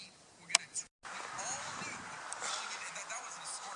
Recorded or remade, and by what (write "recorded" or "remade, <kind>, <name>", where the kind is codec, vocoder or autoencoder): recorded